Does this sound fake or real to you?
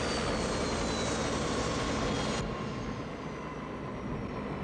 real